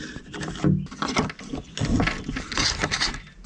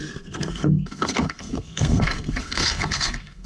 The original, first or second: first